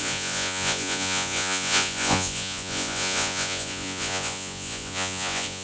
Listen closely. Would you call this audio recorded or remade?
remade